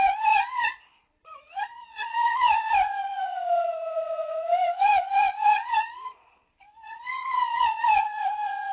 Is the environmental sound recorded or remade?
remade